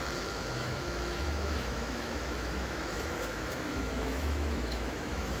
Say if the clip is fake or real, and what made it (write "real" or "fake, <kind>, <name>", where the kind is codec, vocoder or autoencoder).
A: fake, autoencoder, DAC-VAE